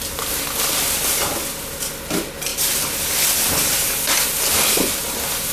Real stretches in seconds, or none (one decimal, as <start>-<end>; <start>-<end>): 0.0-2.5; 4.6-5.5